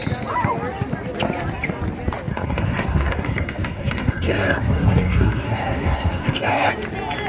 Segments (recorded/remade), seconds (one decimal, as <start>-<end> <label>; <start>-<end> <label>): 0.0-2.3 recorded; 2.3-6.7 remade; 6.7-7.3 recorded